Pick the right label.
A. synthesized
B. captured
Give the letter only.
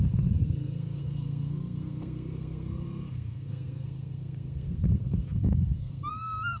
A